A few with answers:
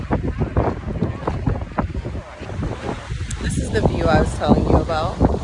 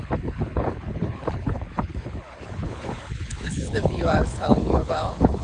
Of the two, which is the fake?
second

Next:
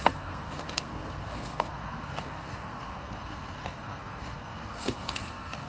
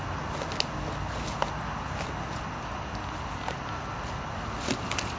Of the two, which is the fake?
first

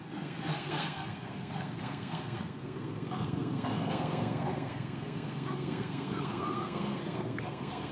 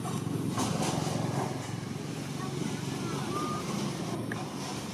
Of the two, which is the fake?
first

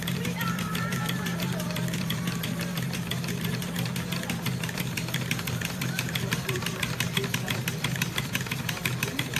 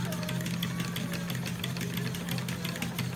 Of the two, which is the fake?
first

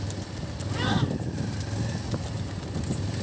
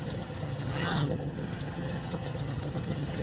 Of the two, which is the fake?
second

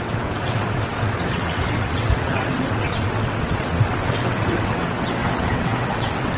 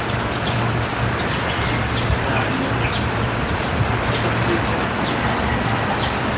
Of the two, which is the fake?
first